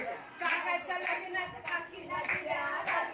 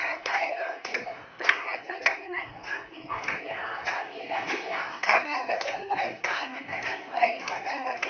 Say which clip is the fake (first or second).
second